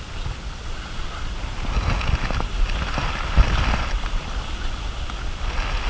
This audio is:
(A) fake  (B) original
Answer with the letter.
B